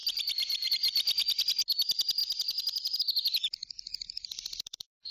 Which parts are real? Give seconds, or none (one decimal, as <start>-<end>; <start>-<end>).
0.7-2.2; 3.0-3.6